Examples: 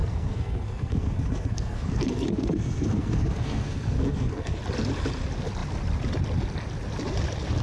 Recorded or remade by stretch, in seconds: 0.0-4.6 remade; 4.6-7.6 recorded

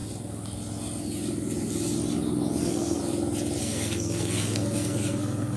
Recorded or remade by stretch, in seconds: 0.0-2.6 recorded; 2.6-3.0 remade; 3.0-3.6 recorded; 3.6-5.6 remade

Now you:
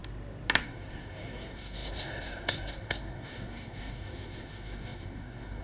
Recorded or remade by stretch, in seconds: 0.0-0.6 recorded; 0.6-5.6 remade

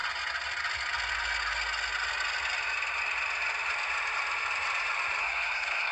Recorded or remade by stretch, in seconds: 0.0-5.2 recorded; 5.2-5.9 remade